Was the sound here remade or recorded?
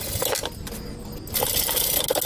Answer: recorded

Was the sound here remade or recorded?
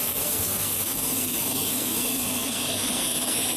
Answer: remade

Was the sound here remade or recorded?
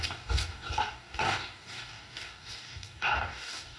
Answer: remade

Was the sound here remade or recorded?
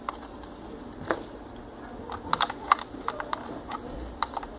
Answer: recorded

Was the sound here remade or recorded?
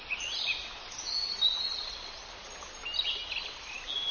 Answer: recorded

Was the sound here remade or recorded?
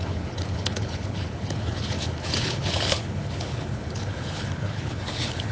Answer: remade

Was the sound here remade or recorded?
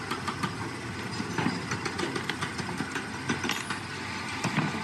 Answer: recorded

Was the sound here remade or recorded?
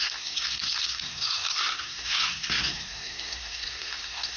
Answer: remade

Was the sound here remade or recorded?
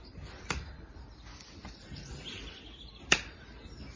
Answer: recorded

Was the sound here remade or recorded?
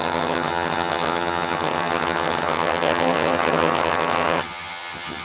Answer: remade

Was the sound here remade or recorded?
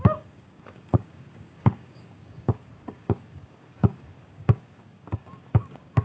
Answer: remade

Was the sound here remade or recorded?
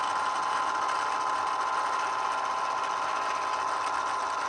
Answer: recorded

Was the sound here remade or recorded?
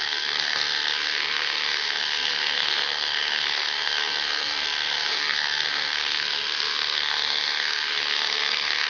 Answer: remade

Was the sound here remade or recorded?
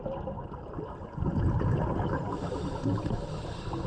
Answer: recorded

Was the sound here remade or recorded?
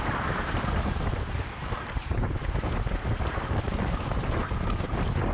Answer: remade